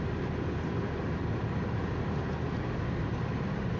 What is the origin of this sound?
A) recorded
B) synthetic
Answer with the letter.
A